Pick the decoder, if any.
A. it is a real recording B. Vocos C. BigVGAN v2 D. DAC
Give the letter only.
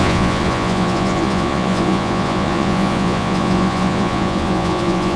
B